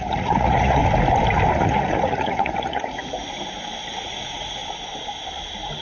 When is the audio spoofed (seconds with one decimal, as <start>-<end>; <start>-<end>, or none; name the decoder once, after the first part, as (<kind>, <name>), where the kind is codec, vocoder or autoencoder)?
0.0-0.8 (vocoder, Vocos); 1.6-3.2; 4.0-4.6